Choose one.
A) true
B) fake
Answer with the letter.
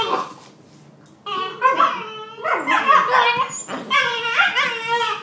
A